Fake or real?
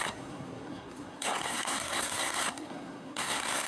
fake